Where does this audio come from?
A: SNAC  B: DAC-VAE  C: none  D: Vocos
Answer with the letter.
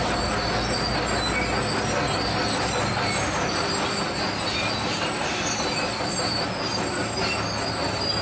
C